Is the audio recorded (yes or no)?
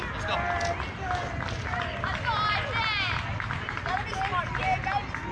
yes